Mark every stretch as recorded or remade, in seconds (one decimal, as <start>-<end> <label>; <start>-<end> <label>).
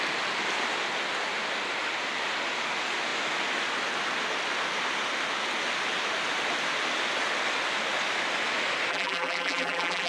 0.0-8.9 recorded; 8.9-10.1 remade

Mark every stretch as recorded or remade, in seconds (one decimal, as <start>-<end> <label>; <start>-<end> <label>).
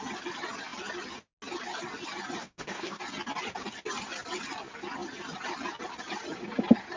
0.0-2.4 recorded; 2.4-3.0 remade; 3.0-7.0 recorded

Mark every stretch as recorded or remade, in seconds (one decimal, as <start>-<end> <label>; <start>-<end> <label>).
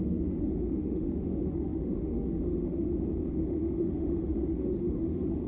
0.0-5.5 remade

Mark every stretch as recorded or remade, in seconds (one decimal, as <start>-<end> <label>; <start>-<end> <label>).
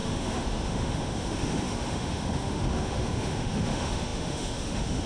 0.0-5.1 remade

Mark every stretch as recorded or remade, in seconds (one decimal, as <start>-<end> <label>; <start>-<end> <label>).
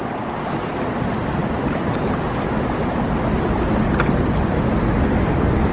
0.0-1.4 recorded; 1.4-4.8 remade; 4.8-5.7 recorded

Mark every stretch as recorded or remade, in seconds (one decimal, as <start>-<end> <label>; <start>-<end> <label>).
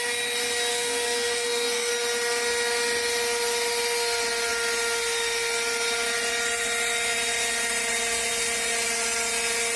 0.0-0.7 recorded; 0.7-1.9 remade; 1.9-9.8 recorded